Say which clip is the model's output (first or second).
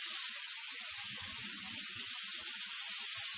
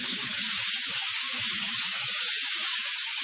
second